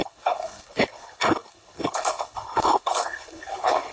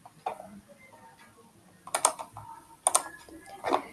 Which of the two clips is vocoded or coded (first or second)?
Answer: first